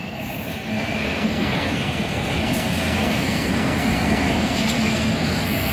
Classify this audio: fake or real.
fake